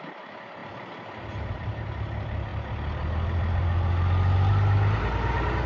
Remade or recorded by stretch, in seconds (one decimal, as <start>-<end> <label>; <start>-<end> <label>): 0.0-5.7 recorded